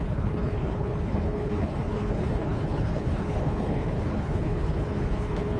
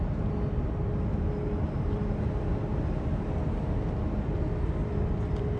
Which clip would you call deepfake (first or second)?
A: first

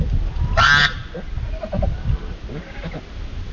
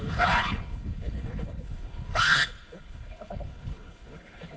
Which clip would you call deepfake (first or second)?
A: second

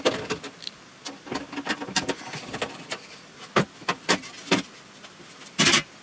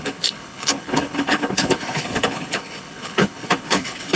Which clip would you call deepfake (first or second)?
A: second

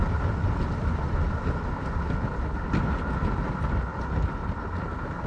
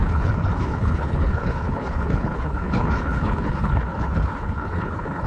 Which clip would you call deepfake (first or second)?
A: second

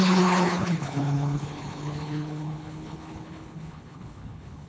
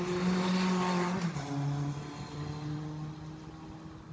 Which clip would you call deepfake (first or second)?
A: first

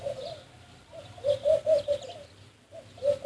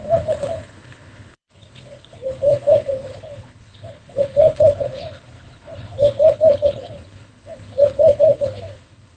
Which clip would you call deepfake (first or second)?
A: second